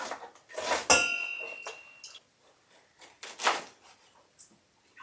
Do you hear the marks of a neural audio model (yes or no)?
no